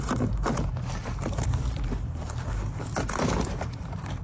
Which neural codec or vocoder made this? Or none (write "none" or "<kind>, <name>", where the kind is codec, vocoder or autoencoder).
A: vocoder, BigVGAN v2